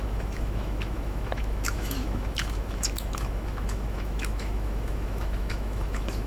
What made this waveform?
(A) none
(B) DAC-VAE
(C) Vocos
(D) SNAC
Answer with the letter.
B